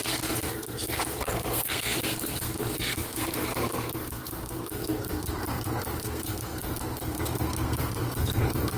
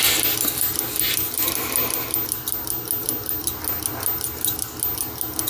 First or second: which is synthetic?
first